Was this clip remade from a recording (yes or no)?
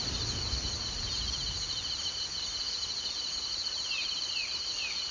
no